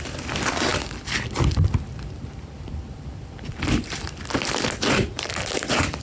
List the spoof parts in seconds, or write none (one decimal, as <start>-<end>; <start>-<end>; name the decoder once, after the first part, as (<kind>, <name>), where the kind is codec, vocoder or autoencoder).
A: 0.0-6.0 (vocoder, BigVGAN v2)